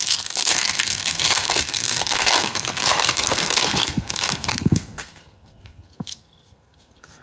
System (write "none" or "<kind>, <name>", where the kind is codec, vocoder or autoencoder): codec, SNAC